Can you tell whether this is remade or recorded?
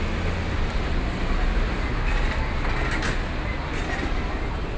recorded